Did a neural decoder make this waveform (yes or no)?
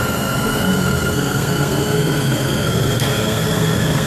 yes